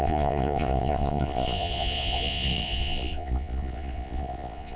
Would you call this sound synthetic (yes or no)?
yes